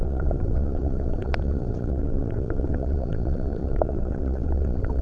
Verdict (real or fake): fake